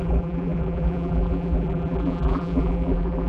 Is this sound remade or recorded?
remade